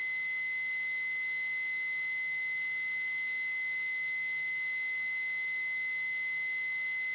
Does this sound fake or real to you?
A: fake